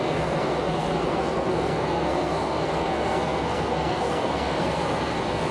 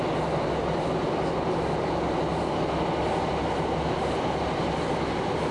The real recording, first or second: second